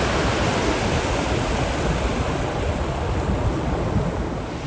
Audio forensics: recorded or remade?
recorded